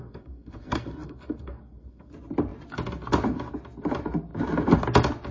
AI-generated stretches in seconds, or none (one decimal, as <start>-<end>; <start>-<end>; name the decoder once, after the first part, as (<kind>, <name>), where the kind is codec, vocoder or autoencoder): 0.0-2.1 (codec, SNAC)

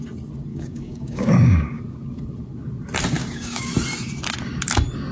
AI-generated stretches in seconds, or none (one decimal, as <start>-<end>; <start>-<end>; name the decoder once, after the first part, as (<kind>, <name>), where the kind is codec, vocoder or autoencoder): 0.5-1.8 (codec, DAC); 3.2-3.7

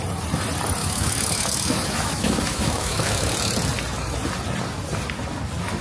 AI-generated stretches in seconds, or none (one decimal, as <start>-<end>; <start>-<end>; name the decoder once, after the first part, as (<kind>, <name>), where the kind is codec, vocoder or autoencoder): 0.8-3.3 (autoencoder, DAC-VAE)

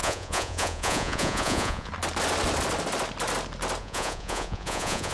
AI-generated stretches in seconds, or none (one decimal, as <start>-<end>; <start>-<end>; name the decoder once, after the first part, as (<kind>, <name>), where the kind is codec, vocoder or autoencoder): 0.0-1.9 (vocoder, Vocos); 3.8-5.1

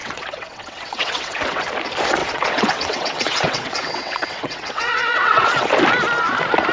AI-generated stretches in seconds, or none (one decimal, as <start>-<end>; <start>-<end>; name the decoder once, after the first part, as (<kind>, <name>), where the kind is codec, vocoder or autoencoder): 0.0-1.6 (vocoder, WaveNeXt); 2.2-5.7

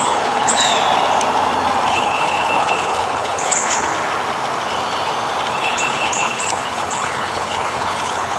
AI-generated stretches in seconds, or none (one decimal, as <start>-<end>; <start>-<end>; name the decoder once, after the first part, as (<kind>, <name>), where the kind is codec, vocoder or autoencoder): 0.0-0.7 (codec, HILCodec); 1.9-3.9; 5.5-8.4